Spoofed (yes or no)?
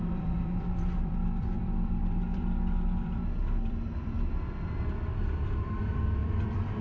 yes